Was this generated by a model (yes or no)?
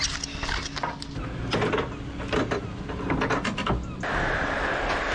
no